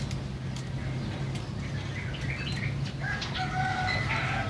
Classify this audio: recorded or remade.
recorded